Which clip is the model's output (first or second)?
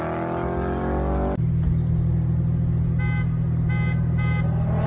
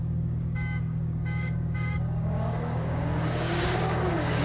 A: second